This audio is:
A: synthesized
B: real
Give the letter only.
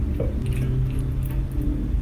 B